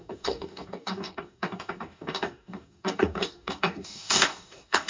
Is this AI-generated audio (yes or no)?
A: yes